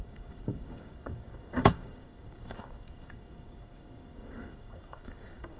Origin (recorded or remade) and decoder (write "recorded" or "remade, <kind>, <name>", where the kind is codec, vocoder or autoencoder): remade, codec, DAC